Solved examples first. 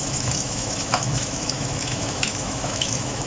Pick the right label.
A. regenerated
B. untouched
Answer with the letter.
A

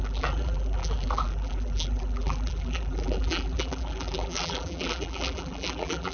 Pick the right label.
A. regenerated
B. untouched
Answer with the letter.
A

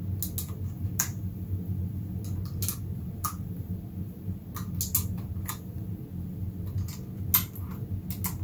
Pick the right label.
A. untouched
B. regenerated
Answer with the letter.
A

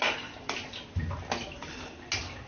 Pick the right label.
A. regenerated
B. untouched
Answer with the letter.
B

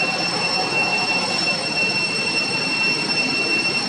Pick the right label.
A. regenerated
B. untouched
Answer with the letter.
B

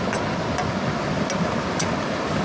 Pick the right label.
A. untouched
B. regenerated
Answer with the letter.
A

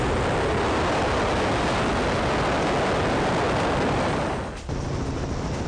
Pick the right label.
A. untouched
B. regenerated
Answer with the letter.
A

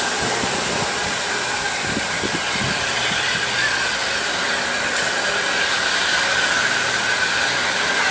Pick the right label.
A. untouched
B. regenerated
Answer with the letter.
A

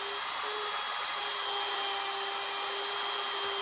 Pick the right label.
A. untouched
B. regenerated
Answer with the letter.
A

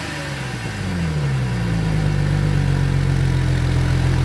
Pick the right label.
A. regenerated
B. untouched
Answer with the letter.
B